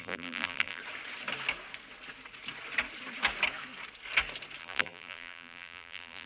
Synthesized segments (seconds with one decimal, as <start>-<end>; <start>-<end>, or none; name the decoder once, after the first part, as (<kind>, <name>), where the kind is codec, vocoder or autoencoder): 0.0-0.8 (vocoder, BigVGAN v2); 4.6-6.3